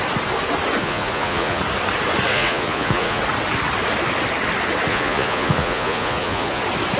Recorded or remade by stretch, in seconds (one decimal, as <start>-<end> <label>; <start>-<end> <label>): 0.0-0.8 recorded; 0.8-1.6 remade; 1.6-2.3 recorded; 2.3-3.2 remade; 3.2-4.9 recorded; 4.9-6.6 remade; 6.6-7.0 recorded